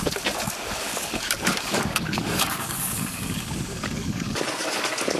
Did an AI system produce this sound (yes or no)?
yes